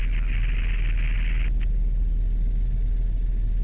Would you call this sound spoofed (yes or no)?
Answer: no